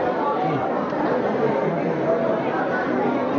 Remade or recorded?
recorded